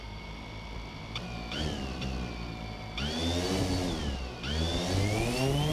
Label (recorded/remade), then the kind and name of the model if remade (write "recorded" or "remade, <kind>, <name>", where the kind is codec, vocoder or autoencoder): recorded